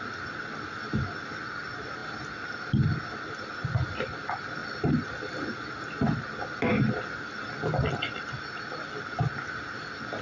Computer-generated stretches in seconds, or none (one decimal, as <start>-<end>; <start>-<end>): none